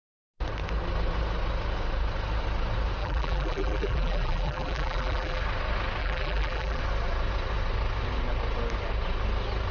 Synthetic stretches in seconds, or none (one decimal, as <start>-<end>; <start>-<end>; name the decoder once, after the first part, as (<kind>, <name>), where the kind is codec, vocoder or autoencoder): 3.0-5.4 (vocoder, BigVGAN v2); 6.0-6.8

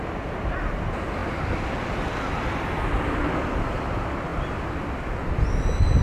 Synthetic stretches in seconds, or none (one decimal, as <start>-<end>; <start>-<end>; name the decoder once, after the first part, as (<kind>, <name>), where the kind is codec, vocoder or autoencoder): 4.3-5.1 (vocoder, BigVGAN v2)

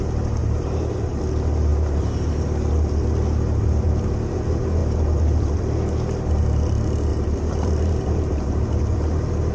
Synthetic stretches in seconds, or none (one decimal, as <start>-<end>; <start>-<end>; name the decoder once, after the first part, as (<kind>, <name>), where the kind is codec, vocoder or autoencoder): 0.4-1.2 (vocoder, BigVGAN v2); 7.1-8.8

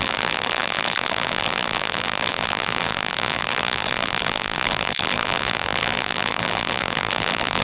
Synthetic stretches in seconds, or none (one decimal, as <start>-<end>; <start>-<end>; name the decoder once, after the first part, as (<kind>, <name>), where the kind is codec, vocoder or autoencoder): 0.0-7.6 (vocoder, BigVGAN v2)

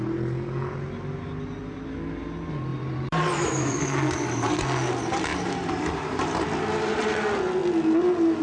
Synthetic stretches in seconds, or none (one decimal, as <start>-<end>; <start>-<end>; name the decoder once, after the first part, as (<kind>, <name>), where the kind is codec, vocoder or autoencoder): 2.7-3.8 (vocoder, BigVGAN v2); 5.3-6.5